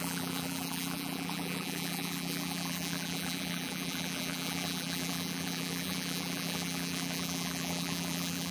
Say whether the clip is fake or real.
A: fake